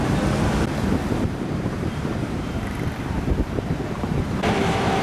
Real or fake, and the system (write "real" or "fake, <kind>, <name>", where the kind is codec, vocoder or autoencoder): fake, vocoder, BigVGAN v2